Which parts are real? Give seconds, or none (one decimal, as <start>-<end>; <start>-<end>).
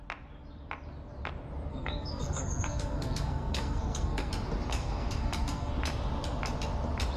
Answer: 0.0-1.7; 4.3-4.7; 5.7-7.2